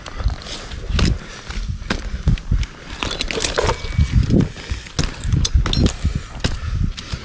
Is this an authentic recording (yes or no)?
yes